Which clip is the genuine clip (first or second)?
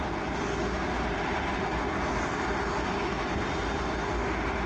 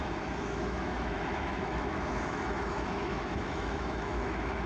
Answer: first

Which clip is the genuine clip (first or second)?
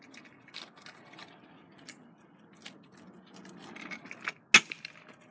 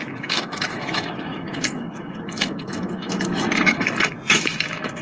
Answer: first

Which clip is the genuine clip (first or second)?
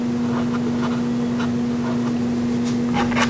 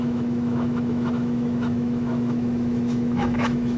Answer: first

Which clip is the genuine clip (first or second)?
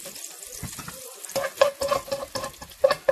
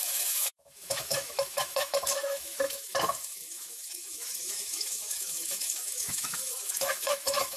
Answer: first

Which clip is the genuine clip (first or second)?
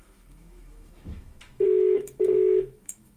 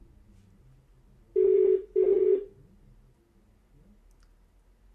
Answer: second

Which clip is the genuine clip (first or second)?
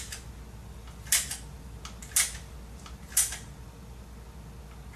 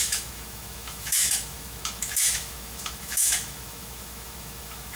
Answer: first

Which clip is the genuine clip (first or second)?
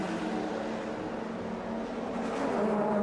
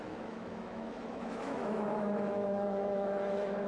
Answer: first